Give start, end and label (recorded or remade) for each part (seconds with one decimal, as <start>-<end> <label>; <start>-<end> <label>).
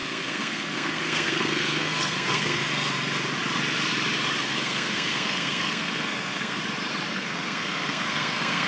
0.0-2.6 remade; 2.6-4.4 recorded; 4.4-6.6 remade; 6.6-7.1 recorded; 7.1-8.7 remade